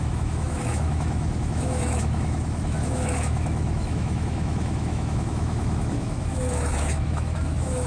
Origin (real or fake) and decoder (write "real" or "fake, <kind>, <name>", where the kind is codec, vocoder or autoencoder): fake, autoencoder, DAC-VAE